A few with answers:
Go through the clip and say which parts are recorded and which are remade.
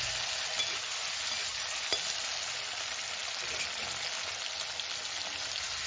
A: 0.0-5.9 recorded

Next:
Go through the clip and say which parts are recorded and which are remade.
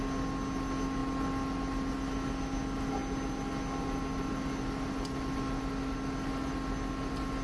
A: 0.0-7.4 recorded